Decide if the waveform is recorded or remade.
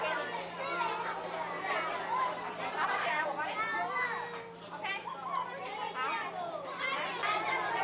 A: recorded